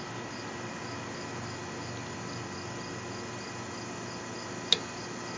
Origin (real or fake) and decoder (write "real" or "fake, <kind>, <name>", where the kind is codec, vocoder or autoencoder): real